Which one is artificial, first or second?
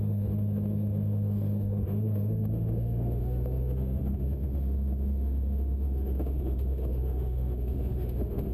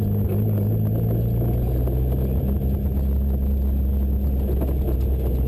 first